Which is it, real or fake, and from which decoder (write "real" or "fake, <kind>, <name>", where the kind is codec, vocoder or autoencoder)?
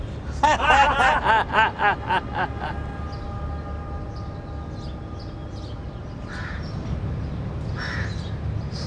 real